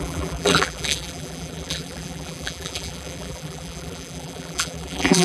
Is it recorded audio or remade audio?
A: remade